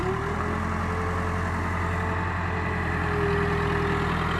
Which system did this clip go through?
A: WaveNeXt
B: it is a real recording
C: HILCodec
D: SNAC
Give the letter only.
B